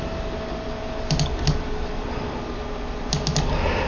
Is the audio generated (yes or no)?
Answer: no